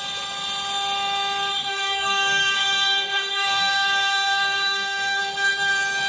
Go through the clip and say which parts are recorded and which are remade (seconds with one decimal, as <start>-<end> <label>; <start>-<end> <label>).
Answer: 0.0-1.5 recorded; 1.5-5.2 remade; 5.2-6.1 recorded